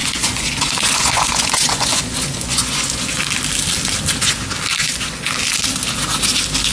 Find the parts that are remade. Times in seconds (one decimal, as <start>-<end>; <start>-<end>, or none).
0.0-3.2; 4.8-5.3